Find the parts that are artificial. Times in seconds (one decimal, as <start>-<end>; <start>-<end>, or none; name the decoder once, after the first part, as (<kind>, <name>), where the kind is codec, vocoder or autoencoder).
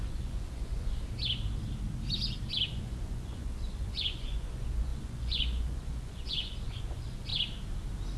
0.0-1.0 (vocoder, Vocos); 2.7-7.3